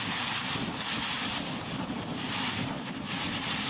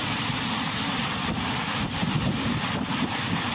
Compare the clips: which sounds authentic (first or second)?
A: first